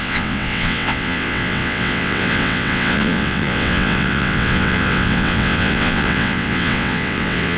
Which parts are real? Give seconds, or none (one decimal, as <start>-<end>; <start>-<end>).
none